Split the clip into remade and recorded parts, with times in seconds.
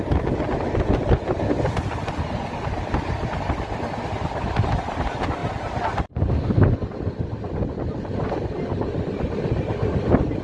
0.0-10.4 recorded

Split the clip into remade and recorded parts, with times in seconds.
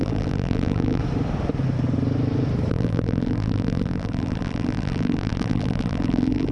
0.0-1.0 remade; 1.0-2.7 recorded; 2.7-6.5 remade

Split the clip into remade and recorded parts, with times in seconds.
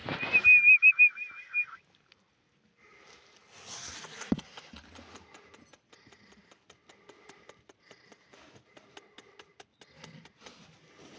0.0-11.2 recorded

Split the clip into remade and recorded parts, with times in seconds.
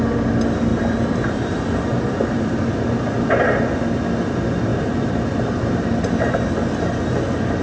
0.0-0.7 recorded; 0.7-3.3 remade; 3.3-4.7 recorded; 4.7-5.8 remade; 5.8-7.6 recorded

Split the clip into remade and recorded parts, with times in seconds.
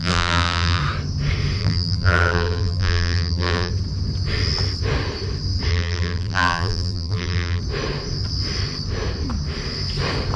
0.0-0.8 remade; 0.8-1.6 recorded; 1.6-3.7 remade; 3.7-5.7 recorded; 5.7-7.6 remade; 7.6-10.4 recorded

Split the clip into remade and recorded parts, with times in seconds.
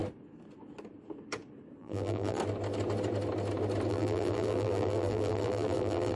0.0-1.8 recorded; 1.8-2.4 remade; 2.4-3.9 recorded; 3.9-6.2 remade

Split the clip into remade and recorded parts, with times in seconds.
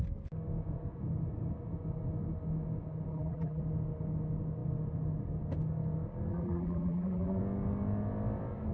0.0-3.1 recorded; 3.1-3.6 remade; 3.6-6.3 recorded; 6.3-7.4 remade; 7.4-8.7 recorded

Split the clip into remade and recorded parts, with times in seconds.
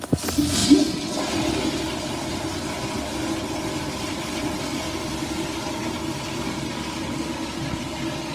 0.0-8.3 recorded